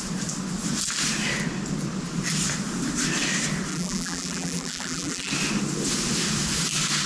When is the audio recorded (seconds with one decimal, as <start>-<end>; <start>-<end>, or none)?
0.0-3.7; 5.3-7.1

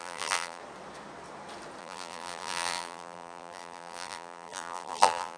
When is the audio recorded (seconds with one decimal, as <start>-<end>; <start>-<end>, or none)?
0.6-1.8

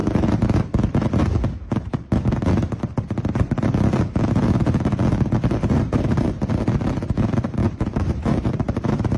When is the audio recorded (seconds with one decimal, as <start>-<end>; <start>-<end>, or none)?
0.0-5.6; 6.5-7.6

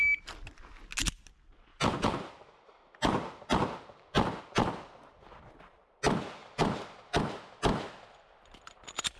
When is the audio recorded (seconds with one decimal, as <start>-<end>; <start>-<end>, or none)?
0.0-1.7; 4.4-6.4; 7.2-9.2